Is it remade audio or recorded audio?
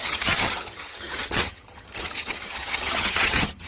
remade